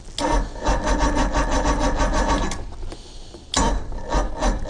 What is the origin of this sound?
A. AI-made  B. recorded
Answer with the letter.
B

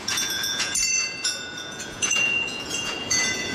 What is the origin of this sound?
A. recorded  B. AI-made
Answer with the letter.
B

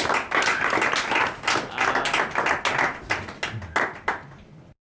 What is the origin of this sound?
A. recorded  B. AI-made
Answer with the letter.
A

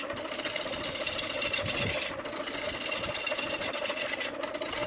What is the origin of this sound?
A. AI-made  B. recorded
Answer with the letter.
B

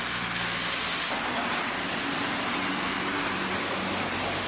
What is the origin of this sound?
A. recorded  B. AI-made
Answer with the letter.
A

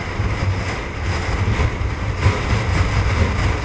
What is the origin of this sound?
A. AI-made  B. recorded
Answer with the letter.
B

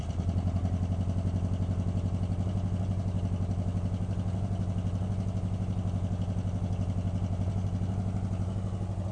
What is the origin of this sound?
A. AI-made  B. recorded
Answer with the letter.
B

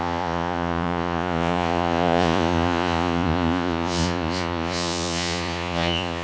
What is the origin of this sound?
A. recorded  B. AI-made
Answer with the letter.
B